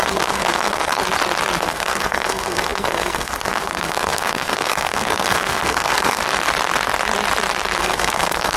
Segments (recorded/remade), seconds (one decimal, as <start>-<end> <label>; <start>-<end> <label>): 0.0-1.0 remade; 1.0-1.6 recorded; 1.6-6.2 remade; 6.2-7.8 recorded; 7.8-8.6 remade